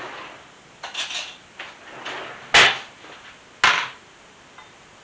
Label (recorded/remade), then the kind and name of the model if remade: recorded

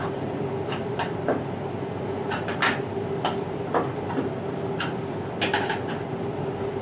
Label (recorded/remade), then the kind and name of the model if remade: recorded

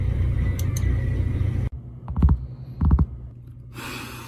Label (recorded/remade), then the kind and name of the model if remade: recorded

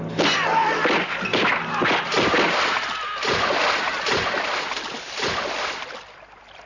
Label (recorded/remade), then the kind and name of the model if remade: recorded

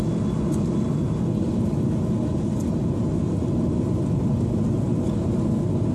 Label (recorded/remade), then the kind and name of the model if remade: recorded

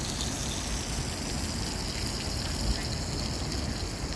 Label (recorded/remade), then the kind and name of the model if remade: recorded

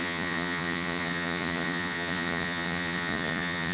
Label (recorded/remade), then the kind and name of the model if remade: remade, vocoder, Vocos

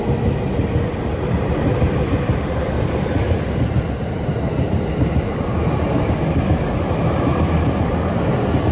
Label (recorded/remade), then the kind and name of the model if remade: recorded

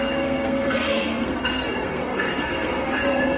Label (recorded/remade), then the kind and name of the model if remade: remade, codec, SNAC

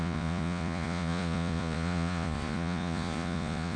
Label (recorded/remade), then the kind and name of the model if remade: remade, vocoder, Vocos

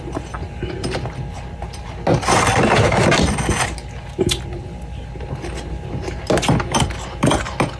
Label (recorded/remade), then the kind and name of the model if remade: recorded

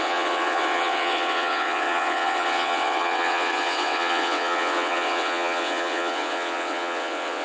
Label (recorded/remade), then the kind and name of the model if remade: remade, vocoder, WaveNeXt